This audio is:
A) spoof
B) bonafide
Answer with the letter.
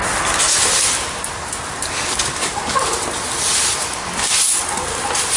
B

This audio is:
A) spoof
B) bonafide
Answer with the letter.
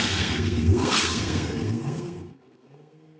A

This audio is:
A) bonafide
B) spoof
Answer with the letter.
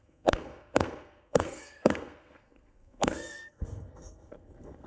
B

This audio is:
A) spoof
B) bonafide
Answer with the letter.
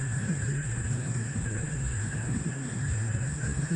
A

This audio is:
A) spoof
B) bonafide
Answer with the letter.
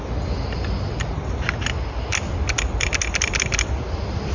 B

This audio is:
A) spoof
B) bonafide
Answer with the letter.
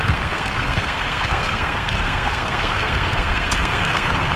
A